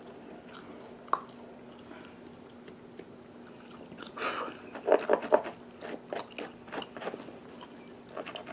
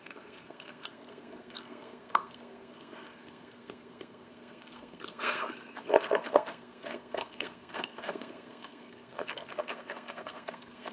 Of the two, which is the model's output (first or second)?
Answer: second